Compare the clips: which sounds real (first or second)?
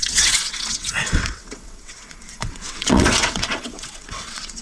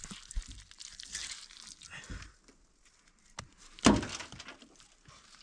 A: second